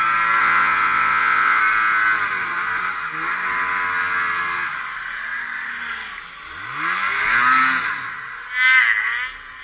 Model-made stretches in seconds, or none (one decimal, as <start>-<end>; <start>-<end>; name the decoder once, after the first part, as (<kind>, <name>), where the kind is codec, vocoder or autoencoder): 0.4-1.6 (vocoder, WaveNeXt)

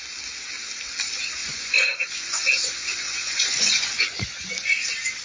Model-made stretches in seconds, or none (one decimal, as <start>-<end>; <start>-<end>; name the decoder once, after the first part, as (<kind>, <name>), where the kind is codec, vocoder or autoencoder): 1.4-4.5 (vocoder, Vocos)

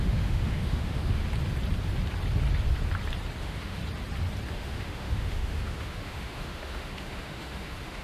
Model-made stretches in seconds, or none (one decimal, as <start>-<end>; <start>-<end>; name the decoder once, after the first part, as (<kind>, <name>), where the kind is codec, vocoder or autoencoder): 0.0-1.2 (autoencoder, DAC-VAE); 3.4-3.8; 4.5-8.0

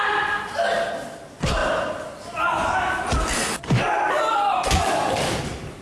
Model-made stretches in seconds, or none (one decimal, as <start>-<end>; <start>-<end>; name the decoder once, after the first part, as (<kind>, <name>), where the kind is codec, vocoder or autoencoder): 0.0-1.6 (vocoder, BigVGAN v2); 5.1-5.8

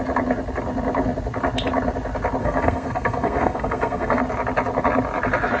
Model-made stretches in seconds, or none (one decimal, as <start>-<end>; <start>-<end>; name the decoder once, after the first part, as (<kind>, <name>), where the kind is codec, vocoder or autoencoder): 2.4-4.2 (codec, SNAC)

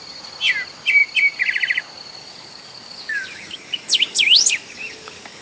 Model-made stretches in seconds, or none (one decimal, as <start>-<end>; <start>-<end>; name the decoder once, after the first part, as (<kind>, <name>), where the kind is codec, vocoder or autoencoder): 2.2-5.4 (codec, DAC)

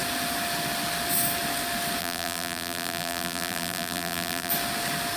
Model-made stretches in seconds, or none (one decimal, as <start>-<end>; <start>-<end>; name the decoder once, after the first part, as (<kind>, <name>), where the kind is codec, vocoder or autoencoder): 2.0-4.5 (vocoder, BigVGAN v2)

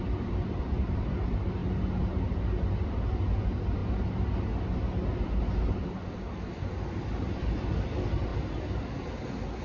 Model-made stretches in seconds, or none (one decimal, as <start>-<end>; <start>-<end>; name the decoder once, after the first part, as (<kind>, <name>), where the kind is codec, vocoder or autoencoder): none